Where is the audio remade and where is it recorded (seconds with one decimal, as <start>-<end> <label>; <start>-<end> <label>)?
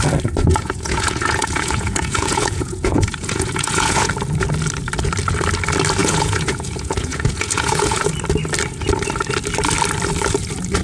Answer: 0.0-0.4 recorded; 0.4-4.1 remade; 4.1-6.0 recorded; 6.0-8.1 remade; 8.1-10.8 recorded